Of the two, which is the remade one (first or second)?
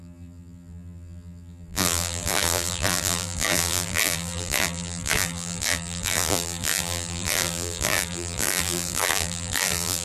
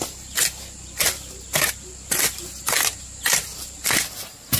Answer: first